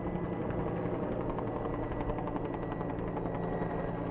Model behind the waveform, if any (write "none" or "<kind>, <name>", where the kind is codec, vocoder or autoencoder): none